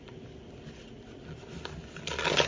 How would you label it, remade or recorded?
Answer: recorded